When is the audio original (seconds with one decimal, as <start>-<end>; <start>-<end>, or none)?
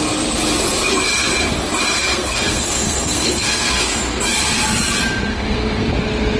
0.0-2.0; 4.0-5.3; 5.9-6.4